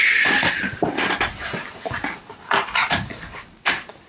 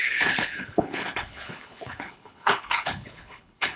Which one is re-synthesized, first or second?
second